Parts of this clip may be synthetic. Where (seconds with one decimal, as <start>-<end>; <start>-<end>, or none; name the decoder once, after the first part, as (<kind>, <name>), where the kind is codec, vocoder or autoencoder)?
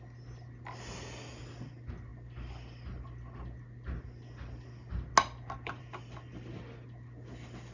none